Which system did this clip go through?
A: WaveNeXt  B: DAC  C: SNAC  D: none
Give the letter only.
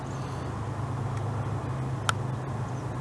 D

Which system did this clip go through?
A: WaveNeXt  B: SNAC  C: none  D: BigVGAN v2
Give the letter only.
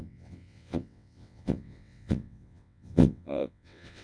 A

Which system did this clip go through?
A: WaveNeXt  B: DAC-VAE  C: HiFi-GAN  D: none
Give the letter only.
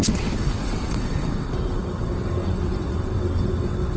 A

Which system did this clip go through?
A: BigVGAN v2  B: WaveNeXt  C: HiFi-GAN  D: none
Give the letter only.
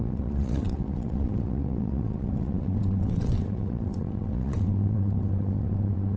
B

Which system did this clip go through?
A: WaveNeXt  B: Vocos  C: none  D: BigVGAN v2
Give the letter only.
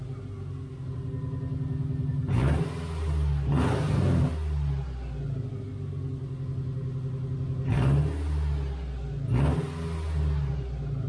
C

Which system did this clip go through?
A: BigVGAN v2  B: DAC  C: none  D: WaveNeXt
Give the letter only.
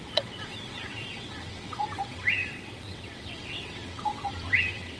D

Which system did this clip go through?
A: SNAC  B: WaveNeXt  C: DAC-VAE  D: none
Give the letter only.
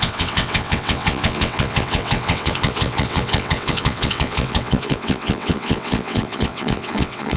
B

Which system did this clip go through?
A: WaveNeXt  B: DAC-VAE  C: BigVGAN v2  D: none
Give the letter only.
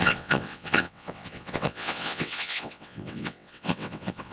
A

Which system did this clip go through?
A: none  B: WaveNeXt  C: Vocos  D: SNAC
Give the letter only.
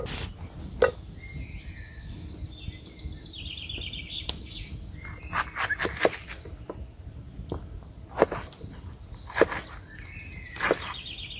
A